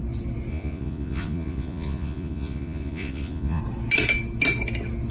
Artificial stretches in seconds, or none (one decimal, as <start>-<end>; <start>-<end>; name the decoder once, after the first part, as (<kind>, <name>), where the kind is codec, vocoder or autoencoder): 0.5-3.6 (vocoder, Vocos)